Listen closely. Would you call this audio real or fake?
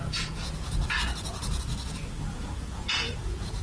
fake